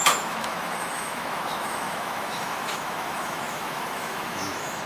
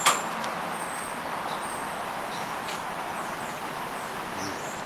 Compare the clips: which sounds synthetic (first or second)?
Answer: first